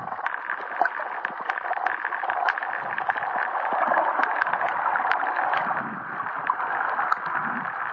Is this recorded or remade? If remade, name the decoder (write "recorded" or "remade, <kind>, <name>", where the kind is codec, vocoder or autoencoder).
recorded